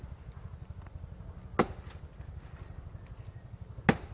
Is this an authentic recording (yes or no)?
yes